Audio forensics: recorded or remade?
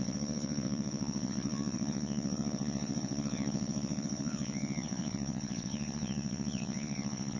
remade